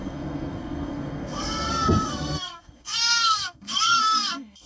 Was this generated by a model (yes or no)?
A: yes